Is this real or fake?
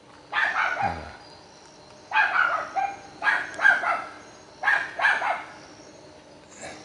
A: real